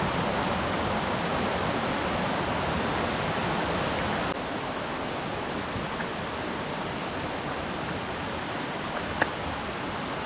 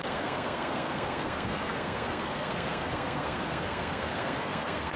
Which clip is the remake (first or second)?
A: second